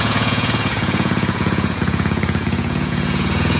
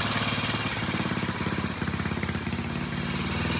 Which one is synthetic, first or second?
first